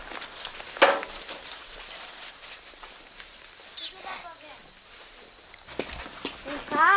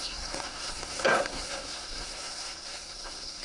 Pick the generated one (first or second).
second